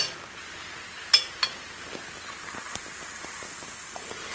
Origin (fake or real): real